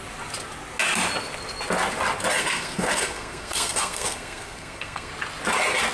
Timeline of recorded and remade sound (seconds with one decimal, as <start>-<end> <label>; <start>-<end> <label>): 0.0-2.4 recorded; 2.4-5.1 remade; 5.1-5.9 recorded